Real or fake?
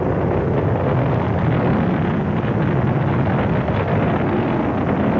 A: real